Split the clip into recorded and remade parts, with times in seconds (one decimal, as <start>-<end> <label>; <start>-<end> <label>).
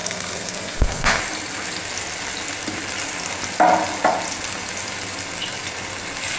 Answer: 0.0-1.2 remade; 1.2-6.4 recorded